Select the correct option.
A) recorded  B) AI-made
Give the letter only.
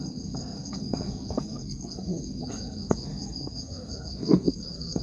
B